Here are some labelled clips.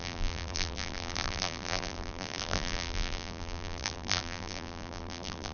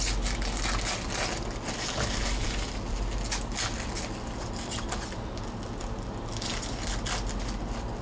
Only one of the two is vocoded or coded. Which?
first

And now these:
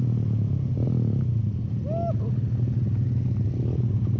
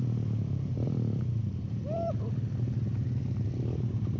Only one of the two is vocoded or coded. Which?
second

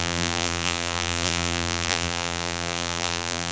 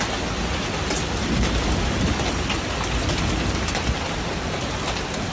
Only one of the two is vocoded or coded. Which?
first